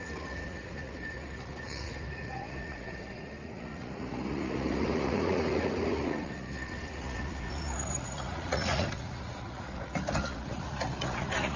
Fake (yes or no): yes